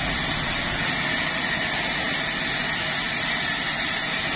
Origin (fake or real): real